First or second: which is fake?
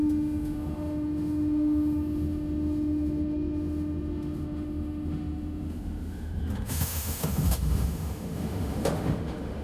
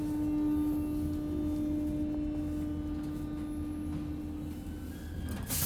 first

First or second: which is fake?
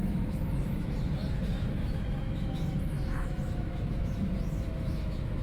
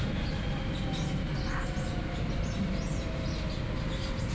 first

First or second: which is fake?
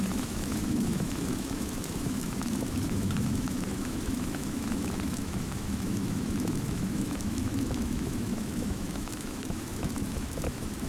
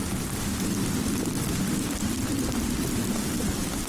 first